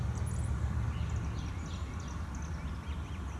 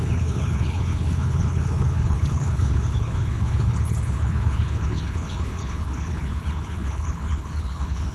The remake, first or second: second